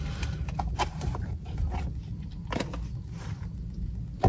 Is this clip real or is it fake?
real